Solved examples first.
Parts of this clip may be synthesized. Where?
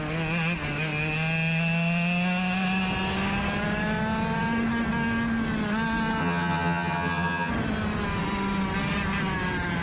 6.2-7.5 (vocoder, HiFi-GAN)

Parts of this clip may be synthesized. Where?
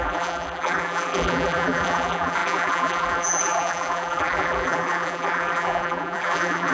0.0-6.7 (vocoder, BigVGAN v2)